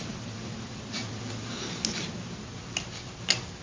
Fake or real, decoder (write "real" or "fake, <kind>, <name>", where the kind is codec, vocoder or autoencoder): real